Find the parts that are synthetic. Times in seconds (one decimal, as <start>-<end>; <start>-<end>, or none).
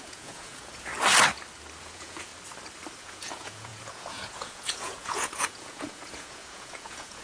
0.0-0.9; 1.8-2.3; 3.0-7.2